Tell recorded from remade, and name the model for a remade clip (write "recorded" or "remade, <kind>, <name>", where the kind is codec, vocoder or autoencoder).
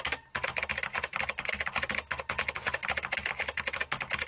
recorded